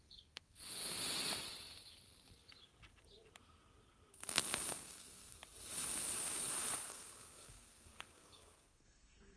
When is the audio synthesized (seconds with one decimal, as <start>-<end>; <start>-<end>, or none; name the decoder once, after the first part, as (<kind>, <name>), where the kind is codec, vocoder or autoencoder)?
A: 0.0-0.8 (codec, SNAC); 4.7-5.4; 6.9-9.4